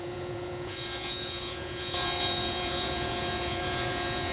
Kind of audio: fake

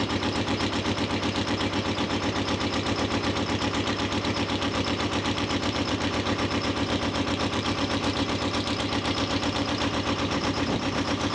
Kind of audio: fake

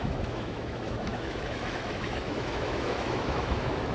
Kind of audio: fake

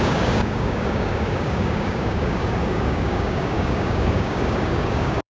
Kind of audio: fake